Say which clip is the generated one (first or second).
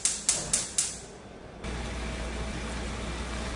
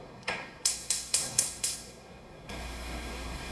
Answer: second